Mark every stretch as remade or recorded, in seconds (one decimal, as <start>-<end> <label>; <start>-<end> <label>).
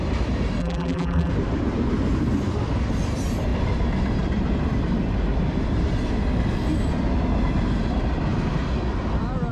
0.0-0.6 recorded; 0.6-1.3 remade; 1.3-9.5 recorded